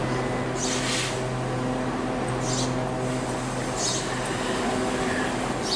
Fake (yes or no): no